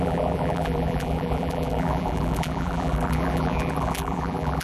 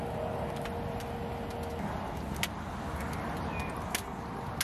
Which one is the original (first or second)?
second